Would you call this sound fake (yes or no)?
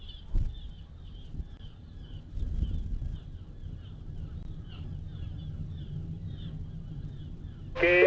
no